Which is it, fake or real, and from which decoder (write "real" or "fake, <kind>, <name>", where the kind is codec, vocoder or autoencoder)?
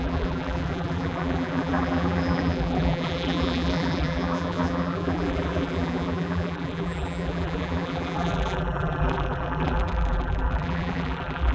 fake, vocoder, BigVGAN v2